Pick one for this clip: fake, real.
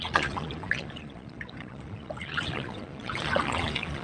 fake